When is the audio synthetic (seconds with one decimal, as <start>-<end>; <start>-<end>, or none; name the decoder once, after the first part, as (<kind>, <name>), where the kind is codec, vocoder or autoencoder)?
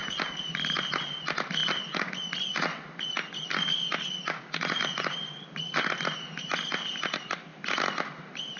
none